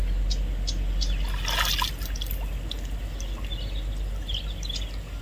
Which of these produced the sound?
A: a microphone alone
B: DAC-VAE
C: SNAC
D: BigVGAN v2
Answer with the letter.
A